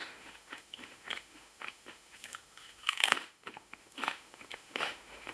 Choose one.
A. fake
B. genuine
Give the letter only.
A